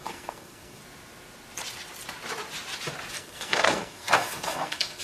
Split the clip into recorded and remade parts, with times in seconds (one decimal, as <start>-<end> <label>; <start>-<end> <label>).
0.0-0.8 remade; 0.8-3.1 recorded; 3.1-5.0 remade